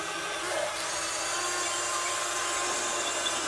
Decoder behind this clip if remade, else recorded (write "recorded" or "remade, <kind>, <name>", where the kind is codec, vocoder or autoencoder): recorded